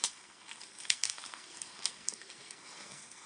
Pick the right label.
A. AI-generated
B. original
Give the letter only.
A